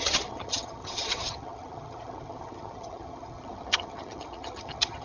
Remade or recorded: remade